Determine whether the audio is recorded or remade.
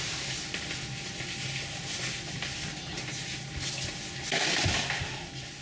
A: recorded